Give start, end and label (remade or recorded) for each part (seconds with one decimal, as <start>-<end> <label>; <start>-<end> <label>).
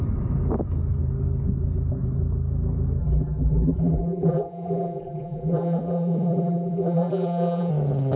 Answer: 0.0-3.0 recorded; 3.0-7.7 remade; 7.7-8.2 recorded